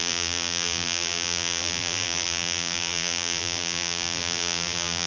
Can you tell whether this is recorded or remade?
remade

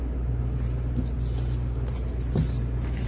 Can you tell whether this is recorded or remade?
recorded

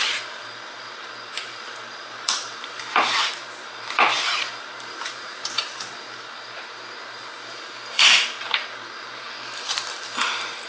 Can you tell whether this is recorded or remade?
remade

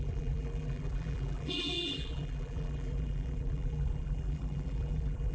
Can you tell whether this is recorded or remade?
remade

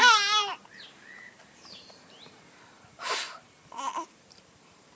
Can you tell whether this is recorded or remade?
remade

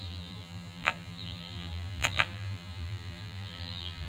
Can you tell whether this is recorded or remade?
remade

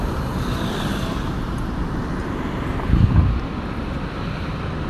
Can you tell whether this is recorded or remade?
recorded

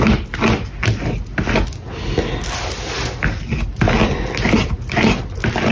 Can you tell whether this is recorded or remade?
recorded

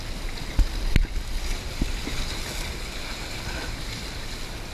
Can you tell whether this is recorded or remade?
recorded